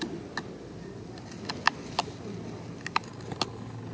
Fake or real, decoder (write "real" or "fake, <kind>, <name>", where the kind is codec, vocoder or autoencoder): real